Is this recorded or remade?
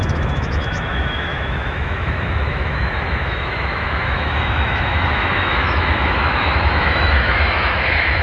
remade